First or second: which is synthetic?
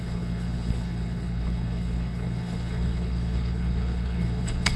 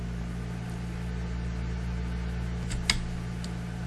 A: first